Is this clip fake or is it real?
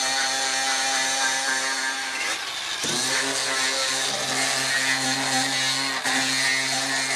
real